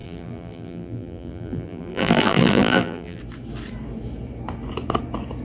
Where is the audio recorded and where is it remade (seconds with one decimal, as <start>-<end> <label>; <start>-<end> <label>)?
0.0-3.2 remade; 3.2-5.4 recorded